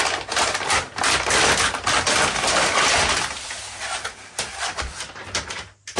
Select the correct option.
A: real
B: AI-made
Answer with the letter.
A